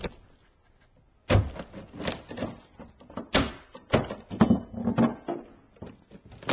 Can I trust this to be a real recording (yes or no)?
yes